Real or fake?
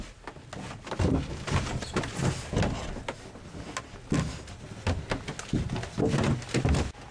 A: real